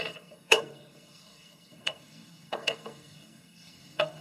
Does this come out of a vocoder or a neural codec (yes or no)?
yes